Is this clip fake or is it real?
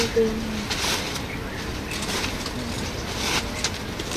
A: real